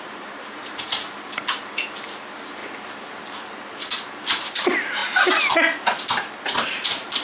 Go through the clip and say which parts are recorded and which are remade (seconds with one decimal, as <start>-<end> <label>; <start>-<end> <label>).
0.0-2.6 remade; 2.6-4.4 recorded; 4.4-5.0 remade; 5.0-6.4 recorded; 6.4-7.2 remade